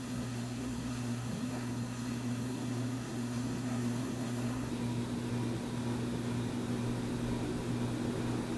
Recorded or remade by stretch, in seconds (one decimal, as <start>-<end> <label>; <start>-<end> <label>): 0.0-4.7 remade; 4.7-8.6 recorded